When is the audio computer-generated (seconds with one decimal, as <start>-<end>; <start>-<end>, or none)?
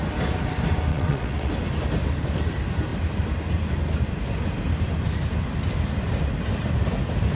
0.9-1.5